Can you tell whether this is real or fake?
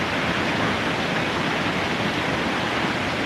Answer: real